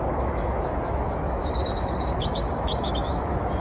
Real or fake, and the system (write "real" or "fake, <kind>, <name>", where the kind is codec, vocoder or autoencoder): fake, autoencoder, DAC-VAE